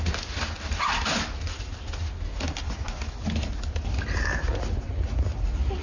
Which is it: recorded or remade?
recorded